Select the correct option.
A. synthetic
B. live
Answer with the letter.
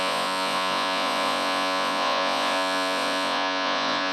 A